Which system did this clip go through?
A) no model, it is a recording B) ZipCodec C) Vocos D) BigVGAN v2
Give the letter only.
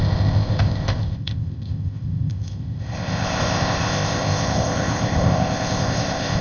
B